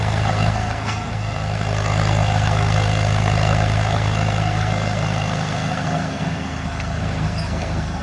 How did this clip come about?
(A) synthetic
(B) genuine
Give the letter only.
A